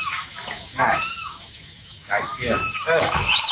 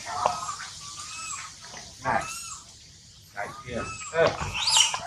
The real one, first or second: second